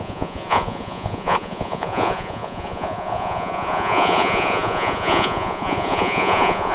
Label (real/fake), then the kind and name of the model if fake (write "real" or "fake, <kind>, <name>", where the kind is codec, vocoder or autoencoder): fake, vocoder, Vocos